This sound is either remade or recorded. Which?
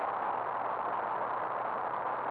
recorded